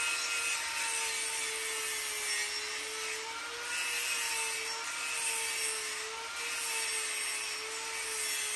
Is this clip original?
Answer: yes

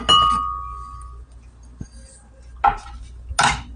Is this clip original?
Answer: yes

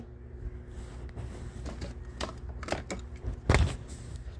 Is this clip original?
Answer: yes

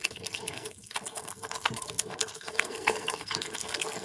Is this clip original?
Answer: no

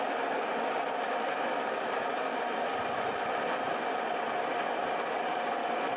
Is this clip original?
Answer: yes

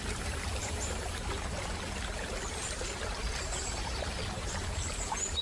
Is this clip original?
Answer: no